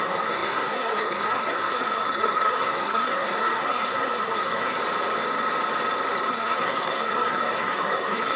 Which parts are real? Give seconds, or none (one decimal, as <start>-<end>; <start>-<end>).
4.8-6.3